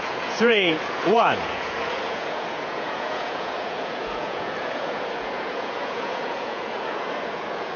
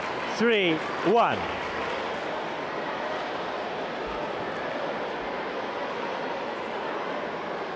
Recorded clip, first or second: second